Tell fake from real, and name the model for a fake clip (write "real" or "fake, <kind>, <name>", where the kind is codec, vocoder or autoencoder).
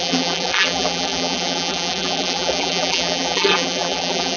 fake, vocoder, BigVGAN v2